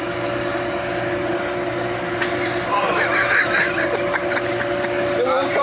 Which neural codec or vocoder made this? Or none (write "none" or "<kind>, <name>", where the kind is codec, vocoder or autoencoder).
none